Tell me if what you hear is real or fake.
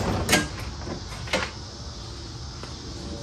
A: real